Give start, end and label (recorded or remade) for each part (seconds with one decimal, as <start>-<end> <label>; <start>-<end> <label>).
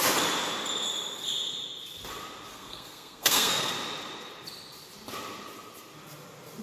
0.0-2.5 recorded; 2.5-3.7 remade; 3.7-6.6 recorded